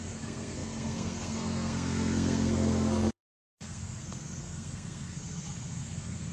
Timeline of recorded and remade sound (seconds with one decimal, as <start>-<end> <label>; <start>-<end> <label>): 0.0-6.3 remade